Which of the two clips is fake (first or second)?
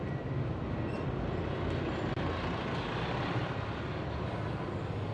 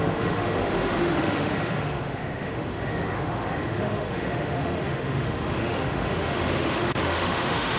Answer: second